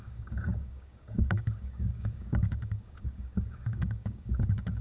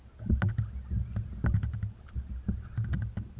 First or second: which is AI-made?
first